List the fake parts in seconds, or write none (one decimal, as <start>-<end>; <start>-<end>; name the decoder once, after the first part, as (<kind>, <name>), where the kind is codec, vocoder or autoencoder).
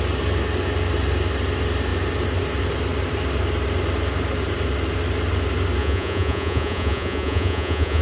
5.8-8.0 (vocoder, Vocos)